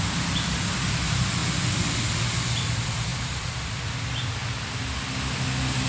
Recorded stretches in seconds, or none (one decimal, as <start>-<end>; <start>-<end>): 4.4-5.3